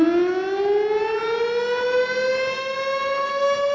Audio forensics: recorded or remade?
recorded